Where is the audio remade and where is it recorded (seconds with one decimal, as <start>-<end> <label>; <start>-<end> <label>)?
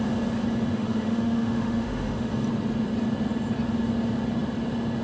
0.0-0.7 recorded; 0.7-2.3 remade; 2.3-5.0 recorded